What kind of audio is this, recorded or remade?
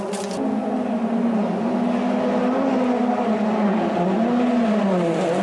recorded